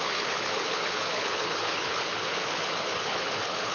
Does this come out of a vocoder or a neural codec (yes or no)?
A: yes